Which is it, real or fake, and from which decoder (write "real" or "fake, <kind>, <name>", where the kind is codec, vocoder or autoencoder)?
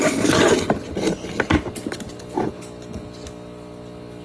real